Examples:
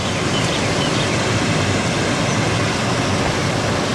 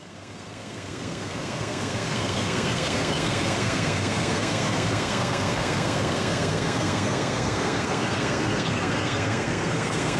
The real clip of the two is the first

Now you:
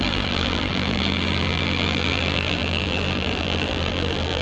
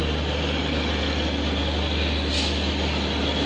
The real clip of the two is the second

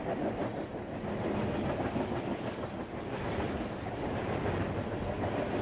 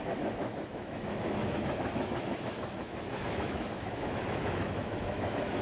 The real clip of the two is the first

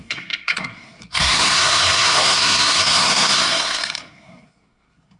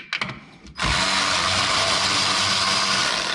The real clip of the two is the second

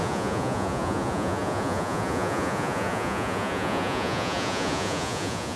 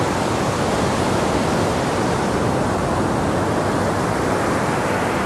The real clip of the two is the second